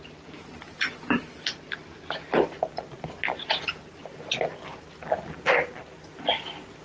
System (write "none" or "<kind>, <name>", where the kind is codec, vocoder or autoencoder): none